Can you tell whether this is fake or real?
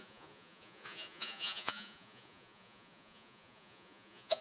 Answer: fake